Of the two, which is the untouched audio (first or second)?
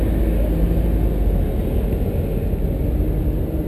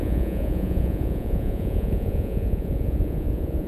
first